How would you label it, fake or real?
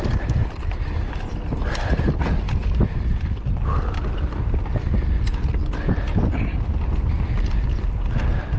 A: real